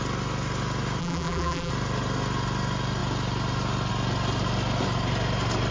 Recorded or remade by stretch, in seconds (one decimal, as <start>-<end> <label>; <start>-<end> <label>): 0.0-1.0 recorded; 1.0-1.7 remade; 1.7-5.7 recorded